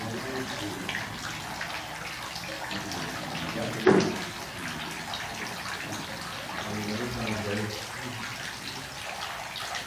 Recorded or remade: recorded